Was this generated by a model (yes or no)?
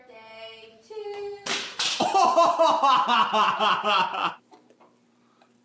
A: yes